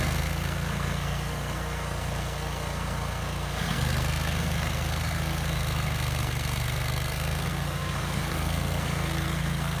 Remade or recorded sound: remade